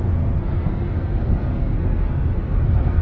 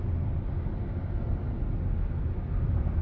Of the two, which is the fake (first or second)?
first